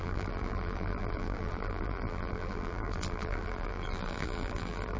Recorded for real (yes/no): no